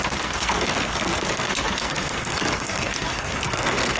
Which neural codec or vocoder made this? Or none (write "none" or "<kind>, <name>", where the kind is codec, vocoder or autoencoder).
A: codec, SNAC